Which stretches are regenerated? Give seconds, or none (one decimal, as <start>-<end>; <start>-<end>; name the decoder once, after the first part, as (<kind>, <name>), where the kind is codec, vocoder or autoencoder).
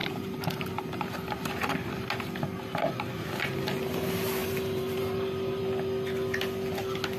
0.0-1.1 (vocoder, BigVGAN v2); 4.4-5.6